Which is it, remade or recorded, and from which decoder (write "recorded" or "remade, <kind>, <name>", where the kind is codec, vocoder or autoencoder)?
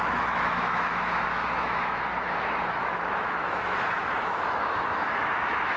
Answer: remade, autoencoder, DAC-VAE